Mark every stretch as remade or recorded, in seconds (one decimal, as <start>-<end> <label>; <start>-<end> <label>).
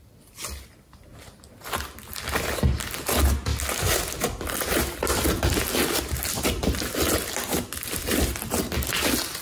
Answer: 0.0-9.4 recorded